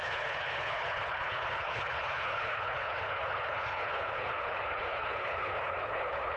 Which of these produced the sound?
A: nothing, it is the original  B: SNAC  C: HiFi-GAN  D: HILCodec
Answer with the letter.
D